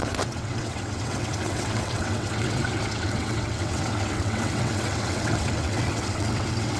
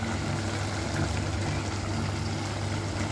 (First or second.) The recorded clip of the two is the second